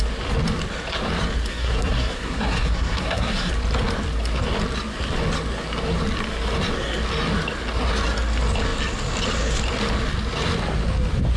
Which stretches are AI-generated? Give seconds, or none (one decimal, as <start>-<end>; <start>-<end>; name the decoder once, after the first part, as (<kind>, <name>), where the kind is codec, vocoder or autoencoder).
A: 1.5-3.5 (codec, SNAC)